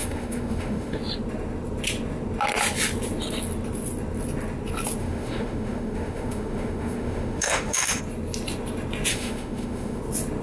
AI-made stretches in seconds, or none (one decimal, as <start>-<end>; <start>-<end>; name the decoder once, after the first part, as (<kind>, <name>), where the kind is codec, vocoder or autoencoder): 0.0-1.0 (autoencoder, DAC-VAE); 5.0-8.0; 9.1-10.0